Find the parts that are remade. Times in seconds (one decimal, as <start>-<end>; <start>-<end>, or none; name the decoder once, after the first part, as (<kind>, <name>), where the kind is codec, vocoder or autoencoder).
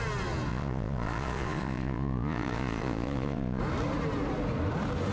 0.5-3.6 (vocoder, Vocos)